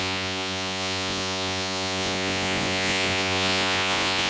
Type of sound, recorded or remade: remade